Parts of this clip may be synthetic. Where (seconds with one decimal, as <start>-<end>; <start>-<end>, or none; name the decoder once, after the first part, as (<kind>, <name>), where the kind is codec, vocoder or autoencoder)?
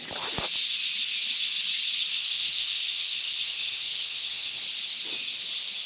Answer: 2.2-4.6 (autoencoder, DAC-VAE)